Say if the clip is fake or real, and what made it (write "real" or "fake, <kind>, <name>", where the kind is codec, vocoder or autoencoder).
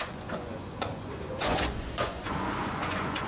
fake, vocoder, Vocos